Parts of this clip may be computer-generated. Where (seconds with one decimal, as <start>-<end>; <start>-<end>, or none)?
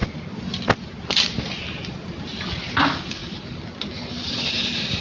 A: none